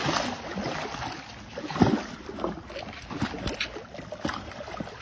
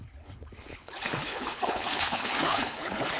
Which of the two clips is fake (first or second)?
second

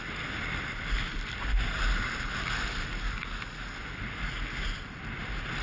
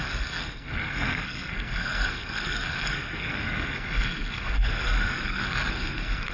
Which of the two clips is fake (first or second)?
second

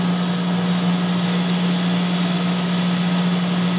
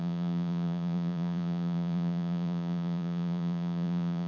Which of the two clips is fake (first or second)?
second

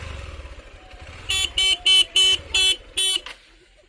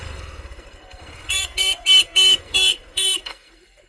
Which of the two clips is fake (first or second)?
second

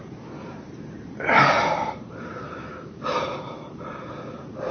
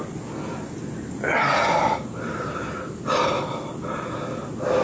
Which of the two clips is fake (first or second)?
first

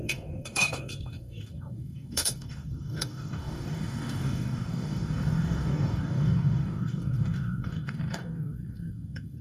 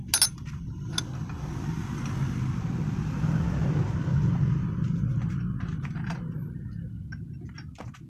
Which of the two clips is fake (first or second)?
first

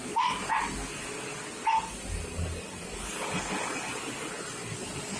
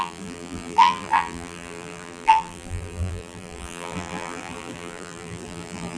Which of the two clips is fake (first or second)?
second